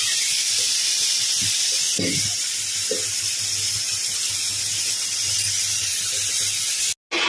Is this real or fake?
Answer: real